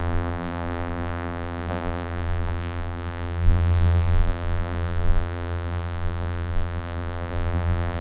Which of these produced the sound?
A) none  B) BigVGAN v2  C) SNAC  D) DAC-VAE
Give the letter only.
B